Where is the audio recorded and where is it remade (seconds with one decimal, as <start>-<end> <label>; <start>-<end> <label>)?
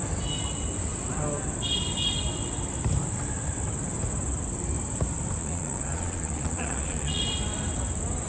0.0-5.4 recorded; 5.4-7.2 remade; 7.2-8.3 recorded